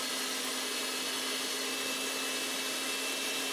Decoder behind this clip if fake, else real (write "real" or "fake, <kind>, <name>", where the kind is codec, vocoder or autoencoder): real